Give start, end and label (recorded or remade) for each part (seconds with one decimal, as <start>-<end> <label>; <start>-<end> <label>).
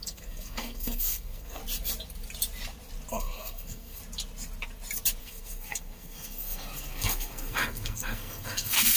0.0-1.6 remade; 1.6-3.1 recorded; 3.1-4.0 remade; 4.0-5.2 recorded; 5.2-9.0 remade